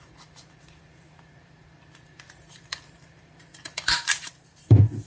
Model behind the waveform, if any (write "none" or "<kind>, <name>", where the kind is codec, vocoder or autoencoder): vocoder, BigVGAN v2